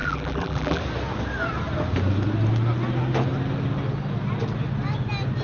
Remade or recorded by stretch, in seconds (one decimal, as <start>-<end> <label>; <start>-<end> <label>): 0.0-0.8 remade; 0.8-5.4 recorded